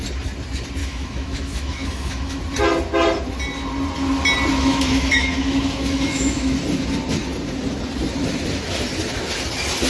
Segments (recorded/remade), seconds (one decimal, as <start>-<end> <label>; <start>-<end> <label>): 0.0-0.8 recorded; 0.8-2.4 remade; 2.4-4.5 recorded; 4.5-6.6 remade; 6.6-9.9 recorded

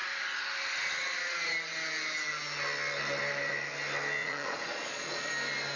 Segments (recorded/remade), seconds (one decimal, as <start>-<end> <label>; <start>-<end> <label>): 0.0-4.2 recorded; 4.2-5.3 remade; 5.3-5.8 recorded

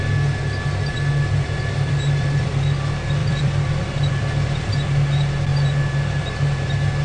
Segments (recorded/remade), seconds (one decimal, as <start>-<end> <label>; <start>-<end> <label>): 0.0-0.9 recorded; 0.9-2.5 remade; 2.5-3.2 recorded; 3.2-4.7 remade; 4.7-7.0 recorded

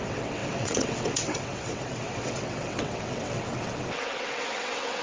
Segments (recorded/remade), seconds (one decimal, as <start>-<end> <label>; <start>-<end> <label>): 0.0-5.0 remade

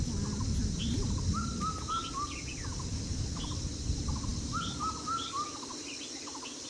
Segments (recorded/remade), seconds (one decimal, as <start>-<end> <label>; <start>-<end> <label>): 0.0-6.7 recorded

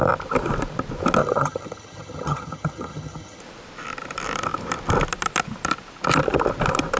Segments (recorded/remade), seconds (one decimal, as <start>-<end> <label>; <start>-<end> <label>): 0.0-1.2 recorded; 1.2-3.4 remade; 3.4-7.0 recorded